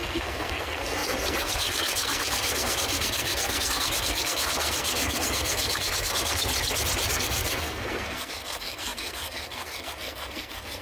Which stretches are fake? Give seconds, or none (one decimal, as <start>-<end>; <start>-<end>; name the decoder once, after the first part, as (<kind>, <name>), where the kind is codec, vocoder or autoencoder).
0.0-6.5 (codec, SNAC); 7.1-10.8